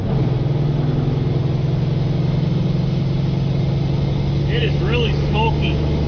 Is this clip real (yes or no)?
yes